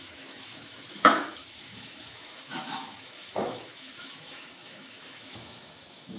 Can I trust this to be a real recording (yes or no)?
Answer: no